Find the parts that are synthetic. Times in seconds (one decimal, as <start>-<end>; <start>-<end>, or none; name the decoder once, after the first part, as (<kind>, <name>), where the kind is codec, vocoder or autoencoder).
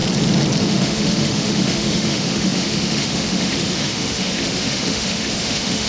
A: 0.6-5.9 (autoencoder, DAC-VAE)